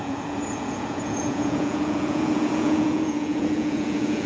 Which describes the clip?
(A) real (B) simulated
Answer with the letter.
B